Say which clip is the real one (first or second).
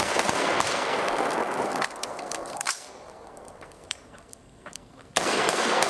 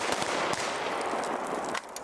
second